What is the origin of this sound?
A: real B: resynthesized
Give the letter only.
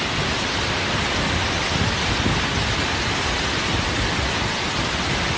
A